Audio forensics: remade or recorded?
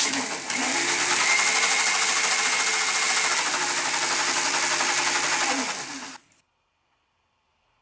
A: recorded